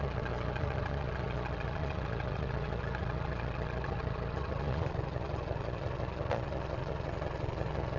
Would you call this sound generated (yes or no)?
yes